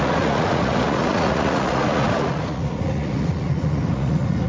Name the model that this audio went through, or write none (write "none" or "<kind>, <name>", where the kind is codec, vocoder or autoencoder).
vocoder, Vocos